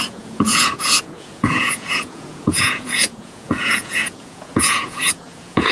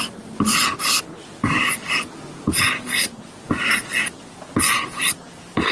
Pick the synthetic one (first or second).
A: first